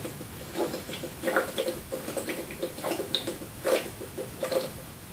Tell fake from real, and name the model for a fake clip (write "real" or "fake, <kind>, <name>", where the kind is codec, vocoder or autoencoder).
fake, autoencoder, DAC-VAE